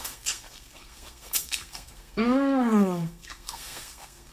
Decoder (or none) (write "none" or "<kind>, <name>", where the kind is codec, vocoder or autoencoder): codec, SNAC